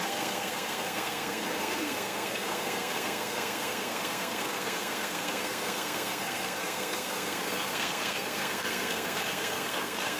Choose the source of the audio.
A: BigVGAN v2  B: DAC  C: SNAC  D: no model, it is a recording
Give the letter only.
C